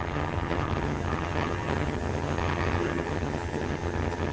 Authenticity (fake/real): fake